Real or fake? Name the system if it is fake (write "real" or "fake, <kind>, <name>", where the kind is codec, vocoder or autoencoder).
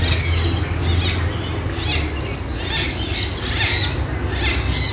real